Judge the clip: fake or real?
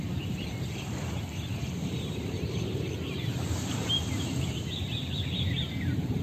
fake